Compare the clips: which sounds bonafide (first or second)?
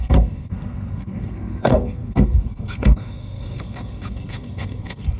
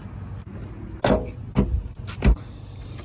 second